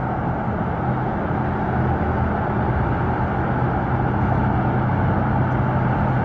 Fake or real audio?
real